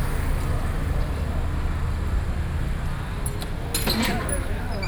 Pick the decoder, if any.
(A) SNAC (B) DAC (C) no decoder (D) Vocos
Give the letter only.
C